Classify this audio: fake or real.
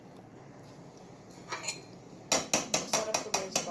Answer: real